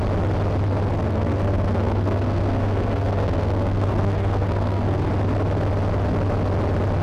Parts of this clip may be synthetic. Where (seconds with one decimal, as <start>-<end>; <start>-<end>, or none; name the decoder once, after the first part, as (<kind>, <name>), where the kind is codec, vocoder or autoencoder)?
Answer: 0.9-5.1 (codec, SNAC)